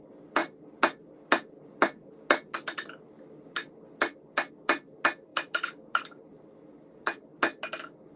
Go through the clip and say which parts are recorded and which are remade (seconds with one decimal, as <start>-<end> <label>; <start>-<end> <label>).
0.0-5.3 recorded; 5.3-6.6 remade; 6.6-8.2 recorded